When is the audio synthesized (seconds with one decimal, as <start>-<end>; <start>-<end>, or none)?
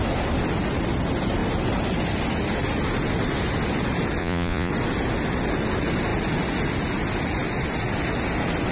4.2-4.7